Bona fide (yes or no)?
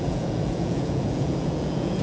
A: no